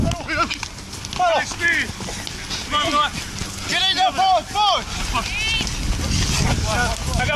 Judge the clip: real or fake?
real